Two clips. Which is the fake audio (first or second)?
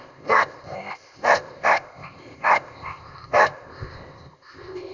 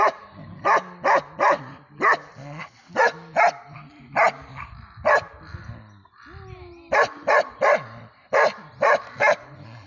first